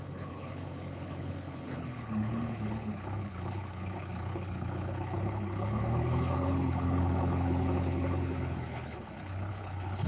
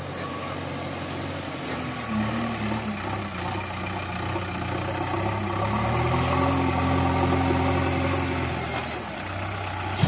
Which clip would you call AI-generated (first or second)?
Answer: first